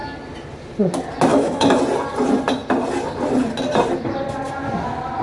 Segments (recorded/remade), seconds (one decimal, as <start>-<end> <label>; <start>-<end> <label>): 0.0-1.3 recorded; 1.3-1.8 remade; 1.8-5.2 recorded